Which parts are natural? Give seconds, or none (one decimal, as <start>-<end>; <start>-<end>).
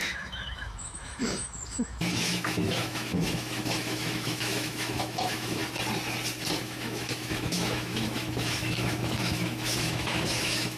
5.6-6.6